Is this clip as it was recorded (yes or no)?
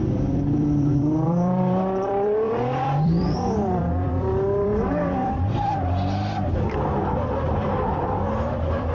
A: no